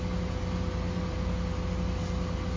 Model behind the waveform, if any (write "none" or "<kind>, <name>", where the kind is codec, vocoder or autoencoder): none